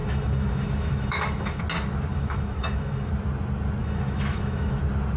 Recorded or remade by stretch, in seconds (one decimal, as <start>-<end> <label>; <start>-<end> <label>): 0.0-1.6 remade; 1.6-2.1 recorded; 2.1-3.1 remade; 3.1-3.8 recorded; 3.8-4.8 remade; 4.8-5.2 recorded